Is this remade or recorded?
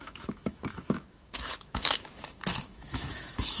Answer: remade